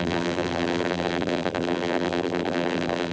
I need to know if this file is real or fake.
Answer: fake